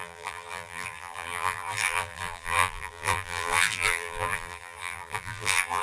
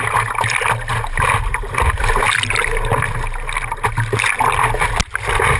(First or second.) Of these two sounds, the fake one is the first